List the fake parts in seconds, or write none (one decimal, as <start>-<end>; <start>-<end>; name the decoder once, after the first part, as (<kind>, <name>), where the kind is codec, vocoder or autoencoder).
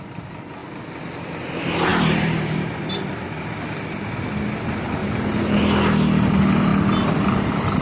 1.9-3.1 (vocoder, BigVGAN v2); 5.0-5.6